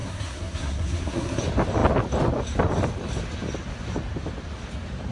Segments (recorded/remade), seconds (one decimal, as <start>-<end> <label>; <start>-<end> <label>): 0.0-1.4 remade; 1.4-5.1 recorded